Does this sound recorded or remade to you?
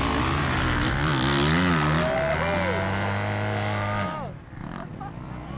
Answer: recorded